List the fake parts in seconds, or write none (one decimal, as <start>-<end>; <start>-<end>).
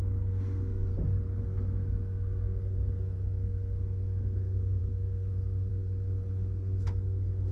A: 0.0-0.9; 1.4-7.5